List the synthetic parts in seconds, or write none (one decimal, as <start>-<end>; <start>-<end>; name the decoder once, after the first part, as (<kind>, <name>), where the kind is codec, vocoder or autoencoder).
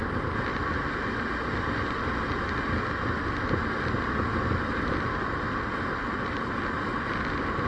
none